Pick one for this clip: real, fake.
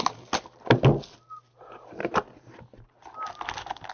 real